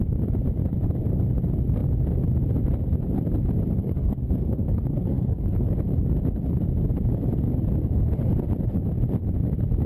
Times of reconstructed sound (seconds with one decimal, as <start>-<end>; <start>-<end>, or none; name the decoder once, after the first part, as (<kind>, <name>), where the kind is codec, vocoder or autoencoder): 3.8-5.7 (codec, SNAC)